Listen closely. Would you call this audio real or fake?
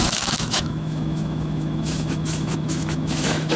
fake